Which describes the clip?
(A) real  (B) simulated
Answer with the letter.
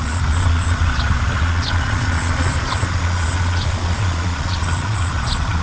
B